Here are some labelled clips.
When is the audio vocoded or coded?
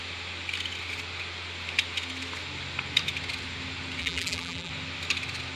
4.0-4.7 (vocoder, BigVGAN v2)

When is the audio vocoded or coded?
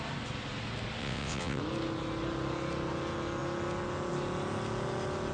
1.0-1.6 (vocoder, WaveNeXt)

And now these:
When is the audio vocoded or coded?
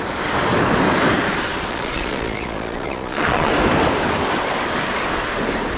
1.7-3.5 (vocoder, Vocos)